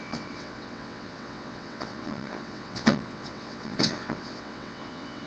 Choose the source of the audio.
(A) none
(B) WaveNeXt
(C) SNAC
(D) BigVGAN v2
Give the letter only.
B